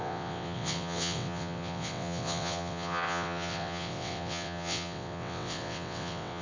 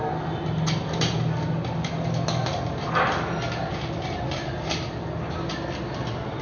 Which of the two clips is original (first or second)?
second